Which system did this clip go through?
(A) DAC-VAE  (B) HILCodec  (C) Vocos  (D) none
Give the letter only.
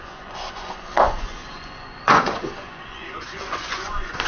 C